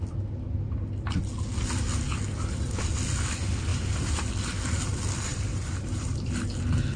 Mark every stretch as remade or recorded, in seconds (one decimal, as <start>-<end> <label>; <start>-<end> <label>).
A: 0.0-3.7 recorded; 3.7-4.3 remade; 4.3-5.3 recorded; 5.3-6.3 remade; 6.3-7.0 recorded